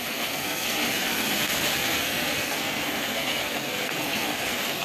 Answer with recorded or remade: remade